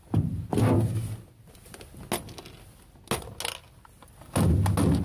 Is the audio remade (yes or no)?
no